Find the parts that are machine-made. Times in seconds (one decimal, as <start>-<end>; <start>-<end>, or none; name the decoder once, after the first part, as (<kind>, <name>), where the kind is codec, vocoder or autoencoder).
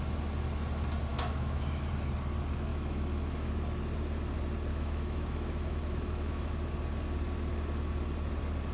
1.1-1.9 (autoencoder, DAC-VAE); 2.7-3.5; 4.7-6.5